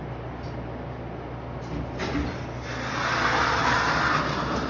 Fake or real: real